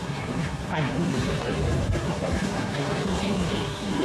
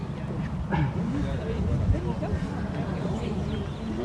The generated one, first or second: first